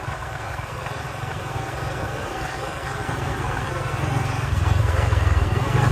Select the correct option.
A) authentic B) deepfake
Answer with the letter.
B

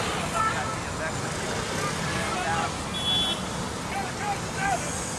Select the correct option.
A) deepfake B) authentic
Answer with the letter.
B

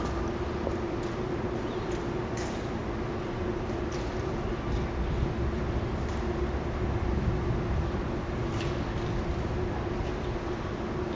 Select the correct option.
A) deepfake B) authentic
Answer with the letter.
B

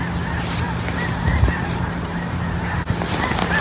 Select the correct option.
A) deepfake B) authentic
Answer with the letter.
B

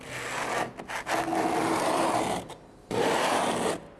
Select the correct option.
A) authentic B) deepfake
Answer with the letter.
A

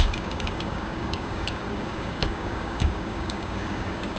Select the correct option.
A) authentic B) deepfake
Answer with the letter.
B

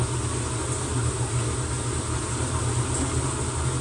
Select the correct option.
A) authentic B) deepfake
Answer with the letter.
A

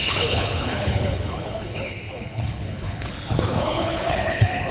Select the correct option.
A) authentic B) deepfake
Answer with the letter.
B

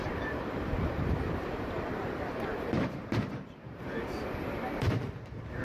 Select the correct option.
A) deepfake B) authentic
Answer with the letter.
A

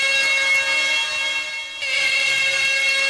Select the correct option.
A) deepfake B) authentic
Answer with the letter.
B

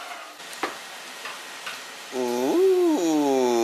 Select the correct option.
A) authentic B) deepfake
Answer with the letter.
A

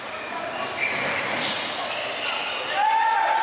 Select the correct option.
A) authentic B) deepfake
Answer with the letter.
A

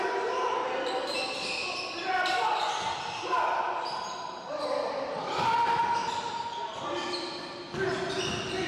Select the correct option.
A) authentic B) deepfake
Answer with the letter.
A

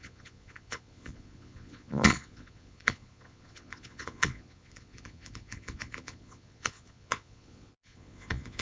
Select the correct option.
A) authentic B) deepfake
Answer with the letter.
B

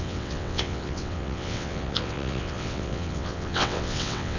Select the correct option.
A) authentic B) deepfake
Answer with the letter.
B